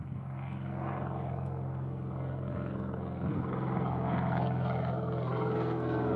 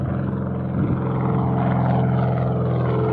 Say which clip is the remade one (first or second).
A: first